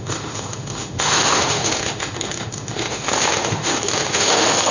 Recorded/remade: remade